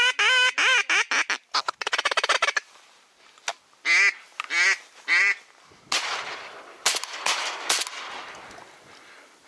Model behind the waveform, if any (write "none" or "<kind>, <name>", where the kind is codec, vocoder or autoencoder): none